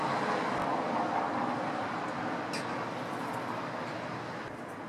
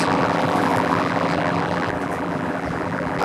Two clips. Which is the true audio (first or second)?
first